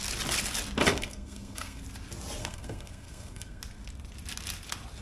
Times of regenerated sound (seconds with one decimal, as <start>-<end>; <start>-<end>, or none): 0.9-1.8; 2.4-3.6